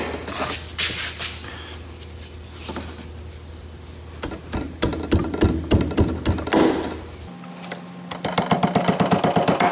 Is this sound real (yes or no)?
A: yes